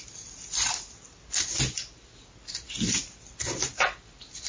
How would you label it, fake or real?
real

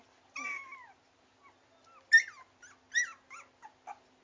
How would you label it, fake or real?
real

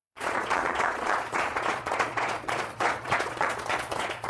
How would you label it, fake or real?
fake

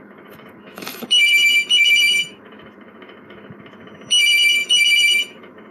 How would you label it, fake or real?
fake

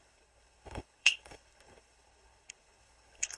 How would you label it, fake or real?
fake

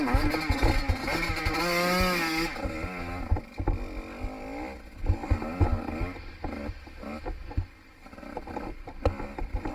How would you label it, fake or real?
real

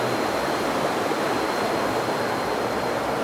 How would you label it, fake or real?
real